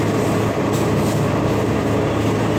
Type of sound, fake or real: real